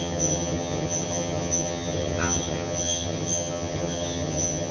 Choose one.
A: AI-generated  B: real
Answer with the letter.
A